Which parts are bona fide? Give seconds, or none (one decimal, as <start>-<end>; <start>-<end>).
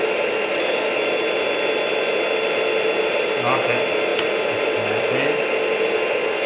0.0-6.5